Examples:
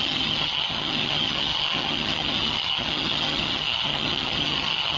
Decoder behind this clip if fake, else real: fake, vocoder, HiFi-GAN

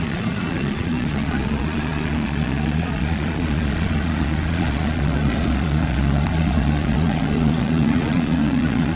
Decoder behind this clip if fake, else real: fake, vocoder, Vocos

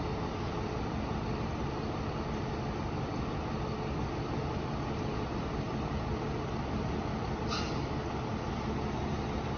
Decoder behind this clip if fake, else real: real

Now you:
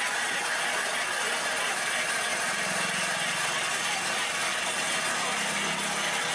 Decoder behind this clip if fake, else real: real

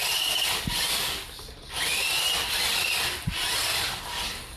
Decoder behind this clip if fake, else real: real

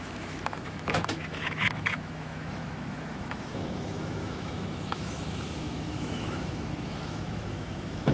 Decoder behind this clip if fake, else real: fake, autoencoder, DAC-VAE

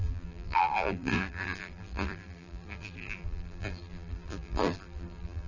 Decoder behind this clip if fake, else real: fake, vocoder, BigVGAN v2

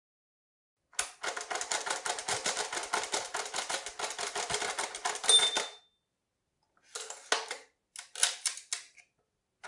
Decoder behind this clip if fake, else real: real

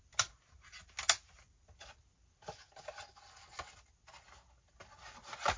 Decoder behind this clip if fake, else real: real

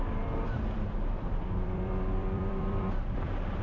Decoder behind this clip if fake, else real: fake, vocoder, BigVGAN v2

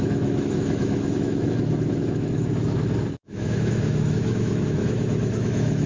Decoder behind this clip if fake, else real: fake, autoencoder, DAC-VAE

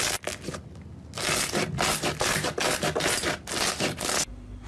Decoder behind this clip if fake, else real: real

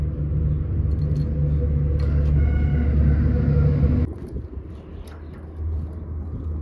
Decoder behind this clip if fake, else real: real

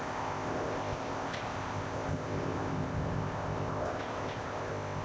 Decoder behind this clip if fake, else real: fake, codec, ZipCodec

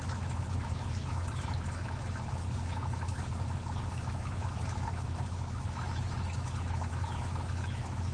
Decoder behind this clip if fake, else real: fake, autoencoder, DAC-VAE